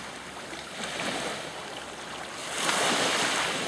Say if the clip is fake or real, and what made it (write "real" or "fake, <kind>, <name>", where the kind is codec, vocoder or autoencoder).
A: real